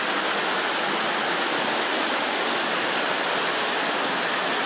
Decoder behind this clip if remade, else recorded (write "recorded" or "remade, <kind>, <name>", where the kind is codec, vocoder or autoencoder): recorded